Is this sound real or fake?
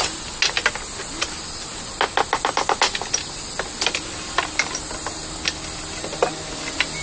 real